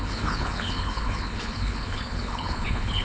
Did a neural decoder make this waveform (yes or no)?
yes